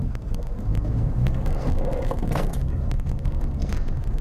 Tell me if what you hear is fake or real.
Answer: fake